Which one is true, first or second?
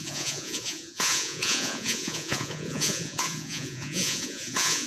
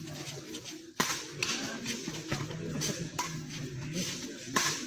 second